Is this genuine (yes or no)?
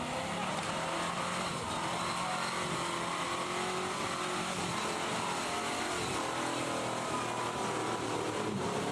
yes